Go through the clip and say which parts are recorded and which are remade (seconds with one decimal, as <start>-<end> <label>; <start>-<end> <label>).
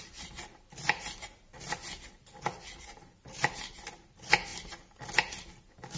0.0-6.0 recorded